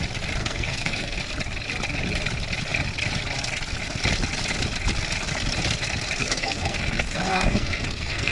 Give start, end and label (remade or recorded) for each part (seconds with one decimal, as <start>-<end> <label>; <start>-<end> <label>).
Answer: 0.0-0.4 recorded; 0.4-1.2 remade; 1.2-6.2 recorded; 6.2-8.3 remade